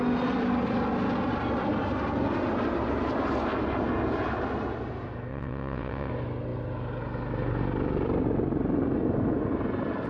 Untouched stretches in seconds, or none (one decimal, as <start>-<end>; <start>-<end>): 0.0-5.3; 6.1-10.1